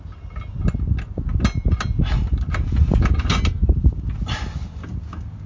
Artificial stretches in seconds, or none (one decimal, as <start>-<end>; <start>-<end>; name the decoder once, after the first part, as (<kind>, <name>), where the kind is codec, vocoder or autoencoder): none